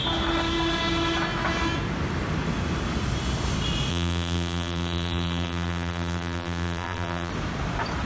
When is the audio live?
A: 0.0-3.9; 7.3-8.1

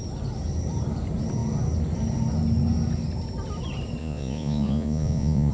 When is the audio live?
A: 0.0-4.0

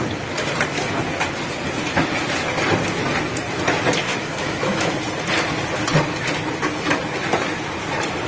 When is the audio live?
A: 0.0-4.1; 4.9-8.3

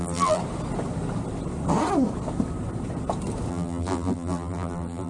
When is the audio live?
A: 0.4-3.5

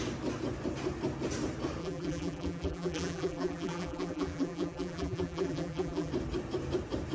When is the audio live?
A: 0.0-1.8; 6.1-7.1

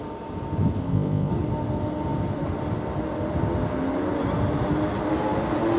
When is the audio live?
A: 0.0-0.8; 1.3-5.8

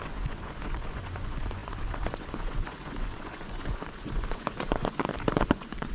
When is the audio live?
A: none